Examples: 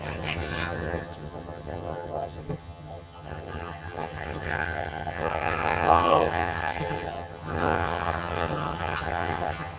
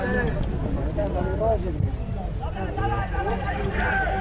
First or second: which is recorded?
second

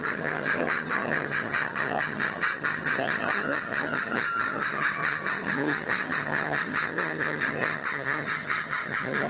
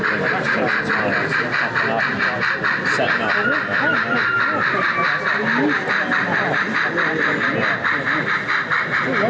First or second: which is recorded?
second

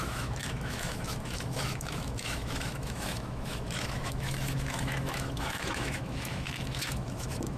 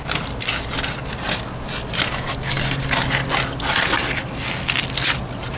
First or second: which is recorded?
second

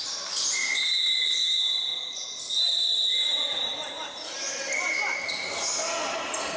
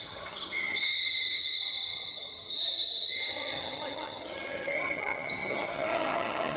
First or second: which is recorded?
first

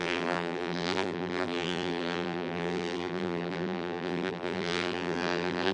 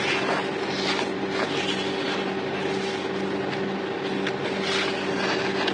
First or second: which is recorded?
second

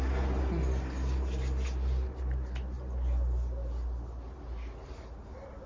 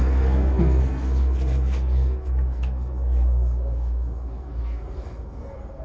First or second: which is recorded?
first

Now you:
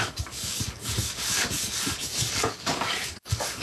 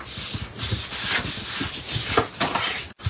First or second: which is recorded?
second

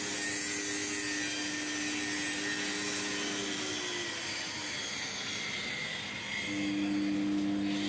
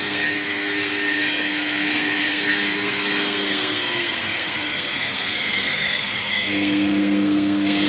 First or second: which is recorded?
first